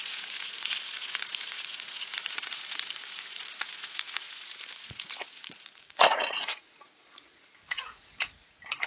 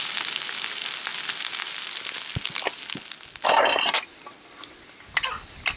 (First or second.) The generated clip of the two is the first